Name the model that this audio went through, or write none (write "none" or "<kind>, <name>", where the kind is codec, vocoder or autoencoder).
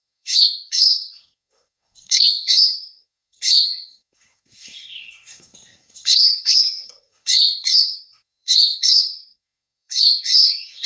codec, SNAC